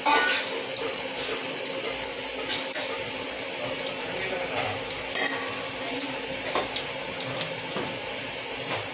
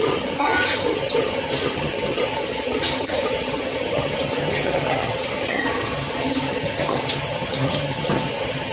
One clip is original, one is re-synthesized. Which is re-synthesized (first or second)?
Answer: second